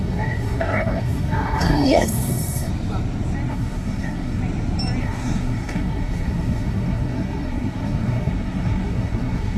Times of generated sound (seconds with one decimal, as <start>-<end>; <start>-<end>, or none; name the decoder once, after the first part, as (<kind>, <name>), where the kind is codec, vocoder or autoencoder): 0.0-2.7 (codec, SNAC); 3.5-4.4; 5.0-9.6